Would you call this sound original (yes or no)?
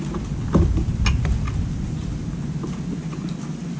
yes